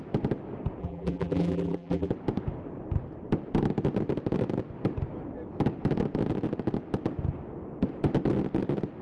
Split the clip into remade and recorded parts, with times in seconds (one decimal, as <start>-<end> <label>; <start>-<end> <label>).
0.0-0.8 recorded; 0.8-2.1 remade; 2.1-9.0 recorded